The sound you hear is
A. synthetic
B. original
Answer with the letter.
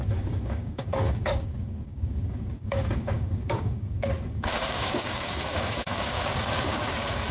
A